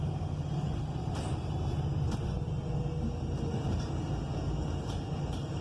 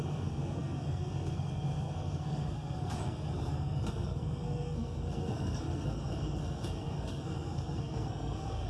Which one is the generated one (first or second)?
second